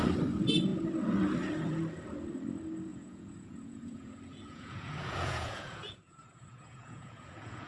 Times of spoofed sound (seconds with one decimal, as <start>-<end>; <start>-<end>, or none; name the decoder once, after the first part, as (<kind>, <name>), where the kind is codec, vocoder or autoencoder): 2.9-7.7 (vocoder, Vocos)

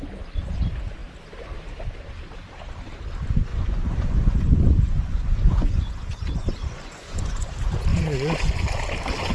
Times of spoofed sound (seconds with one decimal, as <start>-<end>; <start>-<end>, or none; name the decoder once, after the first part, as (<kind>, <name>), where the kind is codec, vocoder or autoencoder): 3.5-7.5 (vocoder, Vocos); 7.9-8.6

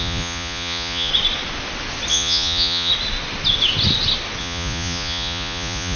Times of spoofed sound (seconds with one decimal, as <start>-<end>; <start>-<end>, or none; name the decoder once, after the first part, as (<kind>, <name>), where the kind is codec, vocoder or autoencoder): 0.0-1.1 (vocoder, Vocos); 2.1-2.9; 4.4-6.0

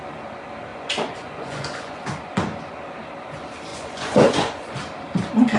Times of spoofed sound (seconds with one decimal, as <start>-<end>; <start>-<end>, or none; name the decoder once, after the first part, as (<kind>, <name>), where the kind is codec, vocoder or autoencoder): 0.7-2.0 (vocoder, Vocos); 3.7-4.8

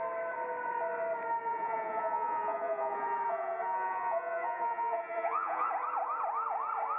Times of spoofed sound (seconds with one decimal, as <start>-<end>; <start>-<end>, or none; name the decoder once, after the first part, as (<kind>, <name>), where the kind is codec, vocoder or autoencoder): 1.5-5.7 (vocoder, Vocos)

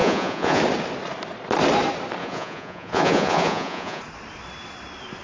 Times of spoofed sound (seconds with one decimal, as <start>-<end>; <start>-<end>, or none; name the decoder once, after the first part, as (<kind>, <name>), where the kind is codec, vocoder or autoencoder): 0.0-0.6 (vocoder, Vocos); 2.2-4.0

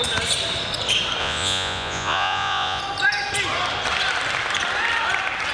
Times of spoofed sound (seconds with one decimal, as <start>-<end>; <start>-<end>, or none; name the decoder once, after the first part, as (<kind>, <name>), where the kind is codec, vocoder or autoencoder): 1.2-2.8 (vocoder, Vocos)

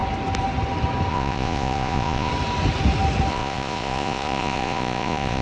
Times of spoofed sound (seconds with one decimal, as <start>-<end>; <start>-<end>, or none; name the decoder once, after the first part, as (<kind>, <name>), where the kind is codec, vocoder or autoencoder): 1.1-2.3 (vocoder, Vocos); 3.3-5.4